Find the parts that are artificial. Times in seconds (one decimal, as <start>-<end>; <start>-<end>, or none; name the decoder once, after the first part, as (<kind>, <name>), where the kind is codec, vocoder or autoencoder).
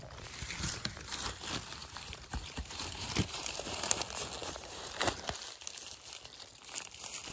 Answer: 1.8-4.0 (vocoder, BigVGAN v2); 4.4-5.2